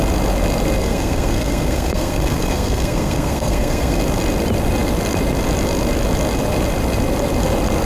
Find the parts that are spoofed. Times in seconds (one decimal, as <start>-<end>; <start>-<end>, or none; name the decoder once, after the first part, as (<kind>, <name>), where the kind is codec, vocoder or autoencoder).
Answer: 0.8-4.0 (codec, SNAC)